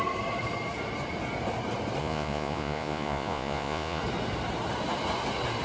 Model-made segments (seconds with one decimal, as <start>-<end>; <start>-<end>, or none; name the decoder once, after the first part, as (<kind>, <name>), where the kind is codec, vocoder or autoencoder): 2.0-4.0 (vocoder, Vocos)